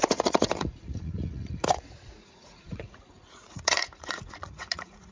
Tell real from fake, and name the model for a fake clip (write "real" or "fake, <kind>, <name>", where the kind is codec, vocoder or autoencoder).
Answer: fake, vocoder, Vocos